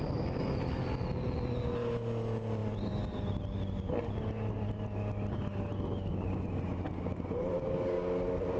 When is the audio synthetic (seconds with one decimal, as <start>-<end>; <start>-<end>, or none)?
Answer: none